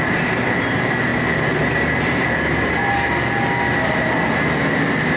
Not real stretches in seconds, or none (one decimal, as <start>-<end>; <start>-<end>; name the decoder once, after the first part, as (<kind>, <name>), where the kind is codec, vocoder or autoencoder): 1.1-2.7 (vocoder, BigVGAN v2)